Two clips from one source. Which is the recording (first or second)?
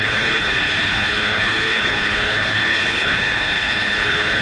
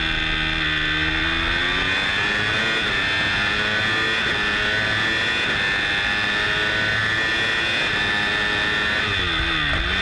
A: second